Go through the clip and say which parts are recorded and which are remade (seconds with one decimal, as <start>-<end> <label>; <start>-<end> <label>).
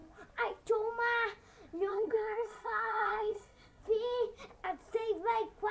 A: 0.0-1.9 recorded; 1.9-3.8 remade; 3.8-5.7 recorded